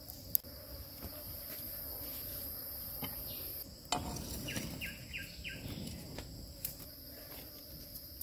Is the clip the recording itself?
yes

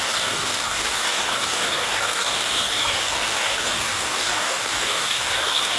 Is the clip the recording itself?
no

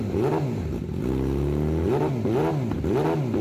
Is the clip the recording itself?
yes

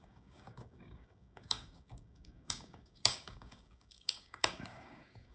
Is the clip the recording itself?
no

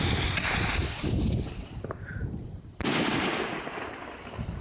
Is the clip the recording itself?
yes